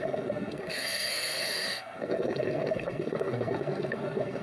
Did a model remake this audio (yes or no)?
yes